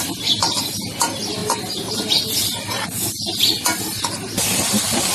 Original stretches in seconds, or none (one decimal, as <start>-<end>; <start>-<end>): 1.4-4.1

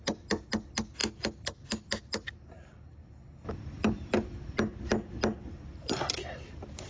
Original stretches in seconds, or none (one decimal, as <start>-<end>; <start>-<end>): 0.0-6.9

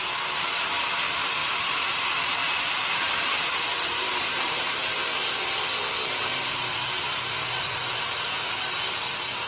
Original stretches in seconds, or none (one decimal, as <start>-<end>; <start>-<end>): 5.0-9.5

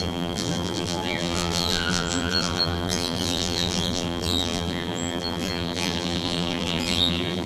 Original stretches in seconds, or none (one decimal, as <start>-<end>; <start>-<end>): none

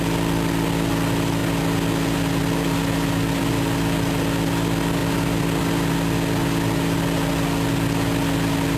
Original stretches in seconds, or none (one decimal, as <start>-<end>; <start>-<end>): 0.0-8.8

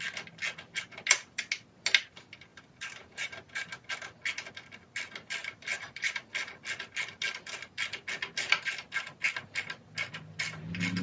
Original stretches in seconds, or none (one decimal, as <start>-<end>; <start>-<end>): 0.0-2.5; 3.9-5.4; 6.2-11.0

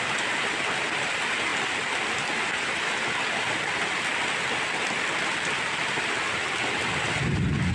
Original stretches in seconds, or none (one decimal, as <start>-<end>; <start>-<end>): 0.0-7.7

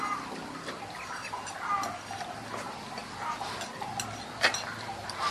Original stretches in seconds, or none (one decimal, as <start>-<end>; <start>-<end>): 0.0-5.3